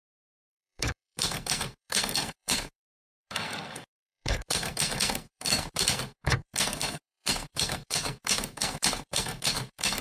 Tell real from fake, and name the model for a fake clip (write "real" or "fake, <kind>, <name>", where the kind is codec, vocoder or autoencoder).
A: fake, codec, SNAC